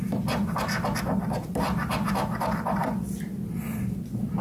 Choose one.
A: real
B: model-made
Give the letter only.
A